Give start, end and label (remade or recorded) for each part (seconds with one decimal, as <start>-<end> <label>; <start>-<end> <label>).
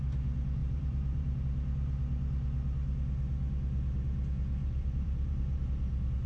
0.0-0.6 recorded; 0.6-1.4 remade; 1.4-4.6 recorded; 4.6-5.6 remade; 5.6-6.3 recorded